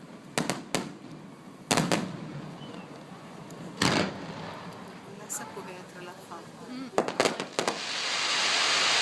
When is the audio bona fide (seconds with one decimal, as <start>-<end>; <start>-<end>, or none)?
0.0-2.3; 3.4-9.0